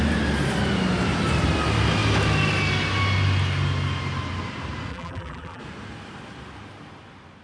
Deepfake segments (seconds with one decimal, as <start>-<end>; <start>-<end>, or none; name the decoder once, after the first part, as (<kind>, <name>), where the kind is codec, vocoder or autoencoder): 4.9-5.6 (vocoder, BigVGAN v2)